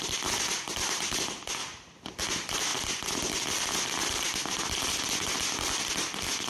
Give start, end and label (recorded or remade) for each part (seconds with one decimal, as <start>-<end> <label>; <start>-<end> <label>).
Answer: 0.0-6.5 recorded